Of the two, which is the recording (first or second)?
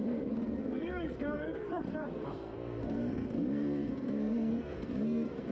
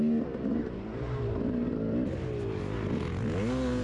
second